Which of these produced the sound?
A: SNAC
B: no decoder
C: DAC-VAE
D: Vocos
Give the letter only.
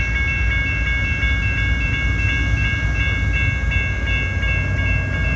B